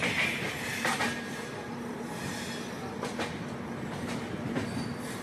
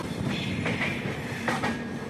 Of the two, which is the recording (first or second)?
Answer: first